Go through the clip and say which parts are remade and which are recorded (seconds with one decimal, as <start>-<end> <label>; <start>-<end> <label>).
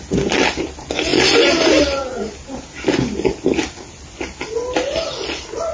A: 0.0-5.7 recorded